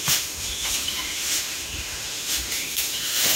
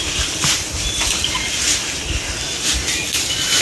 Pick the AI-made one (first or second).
first